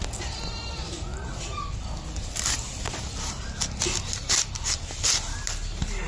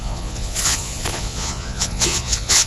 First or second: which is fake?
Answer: second